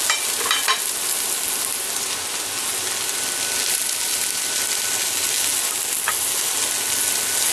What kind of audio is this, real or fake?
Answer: real